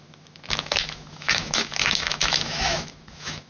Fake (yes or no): yes